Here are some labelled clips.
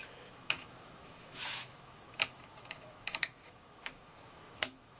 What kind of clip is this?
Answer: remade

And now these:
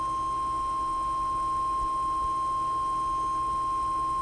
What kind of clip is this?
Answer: recorded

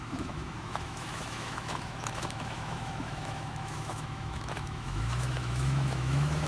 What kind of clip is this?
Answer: remade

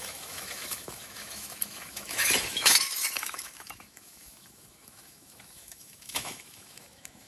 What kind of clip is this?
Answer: remade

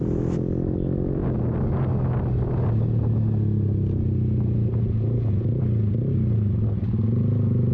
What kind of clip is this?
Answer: recorded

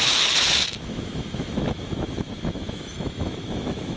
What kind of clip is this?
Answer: remade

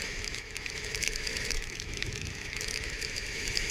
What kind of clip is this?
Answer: remade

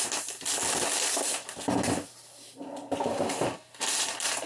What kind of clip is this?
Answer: recorded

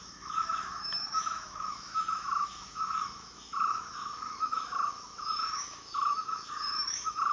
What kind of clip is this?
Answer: remade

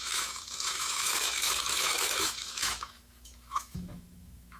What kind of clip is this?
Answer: remade